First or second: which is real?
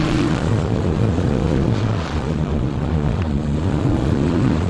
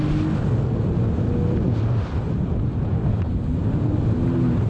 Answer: second